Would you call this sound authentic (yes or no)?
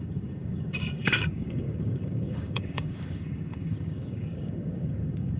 no